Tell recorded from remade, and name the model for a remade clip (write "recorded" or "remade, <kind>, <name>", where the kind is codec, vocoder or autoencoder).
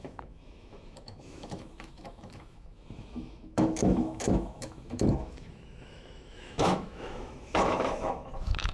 remade, autoencoder, DAC-VAE